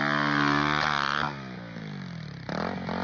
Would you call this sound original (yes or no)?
yes